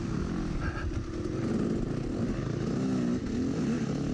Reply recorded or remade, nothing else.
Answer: recorded